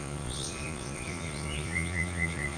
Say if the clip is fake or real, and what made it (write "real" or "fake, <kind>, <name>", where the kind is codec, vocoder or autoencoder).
fake, vocoder, Vocos